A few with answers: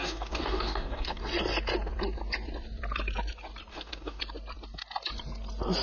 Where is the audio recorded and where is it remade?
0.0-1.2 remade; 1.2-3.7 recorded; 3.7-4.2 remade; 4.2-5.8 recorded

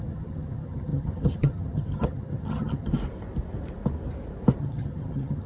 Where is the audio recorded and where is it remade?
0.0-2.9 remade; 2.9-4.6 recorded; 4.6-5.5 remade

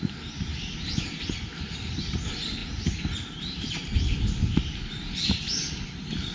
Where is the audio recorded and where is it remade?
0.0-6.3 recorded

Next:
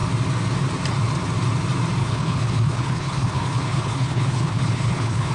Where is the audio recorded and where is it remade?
0.0-2.0 recorded; 2.0-5.3 remade

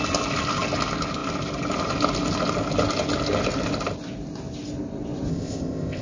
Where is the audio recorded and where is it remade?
0.0-5.3 recorded; 5.3-6.0 remade